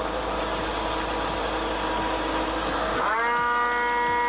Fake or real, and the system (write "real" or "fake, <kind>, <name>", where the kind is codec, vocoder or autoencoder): real